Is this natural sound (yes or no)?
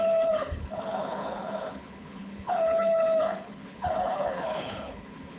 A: no